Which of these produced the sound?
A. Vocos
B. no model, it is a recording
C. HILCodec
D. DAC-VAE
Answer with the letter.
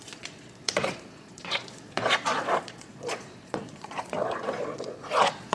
A